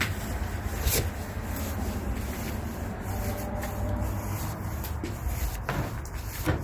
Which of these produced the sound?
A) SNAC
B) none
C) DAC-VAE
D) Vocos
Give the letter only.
B